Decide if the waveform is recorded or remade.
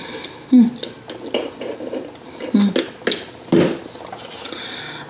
recorded